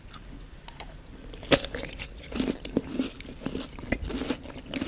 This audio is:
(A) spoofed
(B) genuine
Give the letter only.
B